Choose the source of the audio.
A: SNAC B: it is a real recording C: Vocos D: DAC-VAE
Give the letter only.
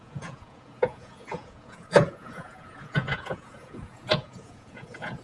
C